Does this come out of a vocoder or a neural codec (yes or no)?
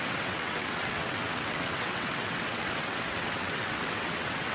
yes